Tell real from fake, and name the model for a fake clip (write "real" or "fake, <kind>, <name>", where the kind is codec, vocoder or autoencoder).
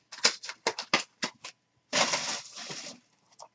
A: real